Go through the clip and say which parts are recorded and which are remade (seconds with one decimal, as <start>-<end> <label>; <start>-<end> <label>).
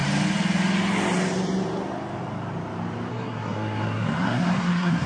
0.0-3.1 recorded; 3.1-5.1 remade